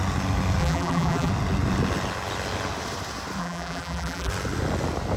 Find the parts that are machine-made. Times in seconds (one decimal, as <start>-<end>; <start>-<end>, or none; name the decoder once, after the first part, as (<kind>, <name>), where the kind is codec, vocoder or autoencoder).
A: 0.6-1.3 (vocoder, BigVGAN v2); 3.4-4.3